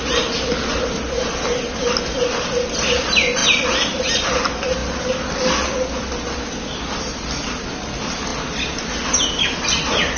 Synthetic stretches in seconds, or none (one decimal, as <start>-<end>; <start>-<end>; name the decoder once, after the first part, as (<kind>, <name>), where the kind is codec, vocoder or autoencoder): none

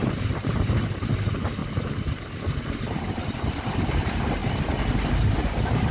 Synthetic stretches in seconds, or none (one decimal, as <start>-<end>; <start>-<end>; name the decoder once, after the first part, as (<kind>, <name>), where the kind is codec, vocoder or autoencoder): 0.0-1.6 (vocoder, BigVGAN v2); 2.7-4.4; 5.1-5.9

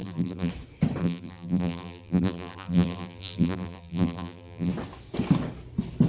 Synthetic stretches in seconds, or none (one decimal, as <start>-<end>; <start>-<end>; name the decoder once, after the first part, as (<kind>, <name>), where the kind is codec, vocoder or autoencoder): 0.0-0.5 (vocoder, BigVGAN v2); 1.0-4.7

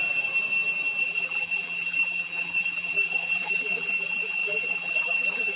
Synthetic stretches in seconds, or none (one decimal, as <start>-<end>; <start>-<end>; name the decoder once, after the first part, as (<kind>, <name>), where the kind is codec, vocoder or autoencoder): 1.0-5.6 (vocoder, BigVGAN v2)

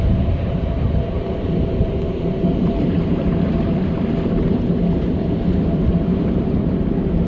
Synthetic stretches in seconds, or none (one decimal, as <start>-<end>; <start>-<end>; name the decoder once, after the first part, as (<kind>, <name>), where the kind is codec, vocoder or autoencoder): 0.0-7.3 (vocoder, BigVGAN v2)

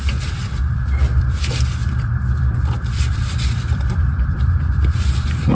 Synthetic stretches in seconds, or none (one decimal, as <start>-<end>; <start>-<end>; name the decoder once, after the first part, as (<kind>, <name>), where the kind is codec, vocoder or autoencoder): 0.0-5.5 (vocoder, BigVGAN v2)